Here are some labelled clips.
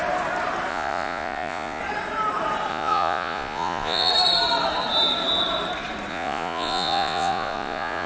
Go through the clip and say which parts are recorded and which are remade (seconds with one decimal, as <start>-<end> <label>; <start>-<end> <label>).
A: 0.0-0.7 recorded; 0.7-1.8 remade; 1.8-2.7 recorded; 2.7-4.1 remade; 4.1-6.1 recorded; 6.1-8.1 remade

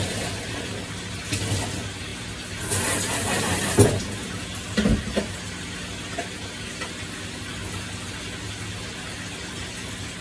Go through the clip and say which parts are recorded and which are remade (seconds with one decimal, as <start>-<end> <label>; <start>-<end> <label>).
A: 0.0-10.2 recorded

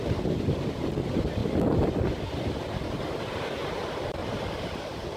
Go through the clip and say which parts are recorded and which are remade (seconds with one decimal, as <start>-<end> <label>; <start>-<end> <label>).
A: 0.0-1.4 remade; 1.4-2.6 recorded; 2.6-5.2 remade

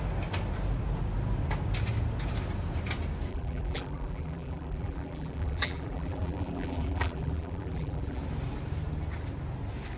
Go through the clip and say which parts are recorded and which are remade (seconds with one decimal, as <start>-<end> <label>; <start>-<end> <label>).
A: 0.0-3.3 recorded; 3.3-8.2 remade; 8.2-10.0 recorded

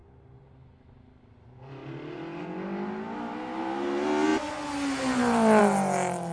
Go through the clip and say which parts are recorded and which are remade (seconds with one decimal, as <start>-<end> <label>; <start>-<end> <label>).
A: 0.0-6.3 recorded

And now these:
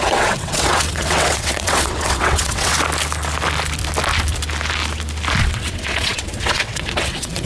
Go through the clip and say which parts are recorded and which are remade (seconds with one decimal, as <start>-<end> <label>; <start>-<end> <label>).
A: 0.0-2.7 remade; 2.7-5.4 recorded; 5.4-7.5 remade